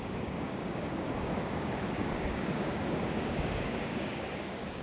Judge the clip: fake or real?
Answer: fake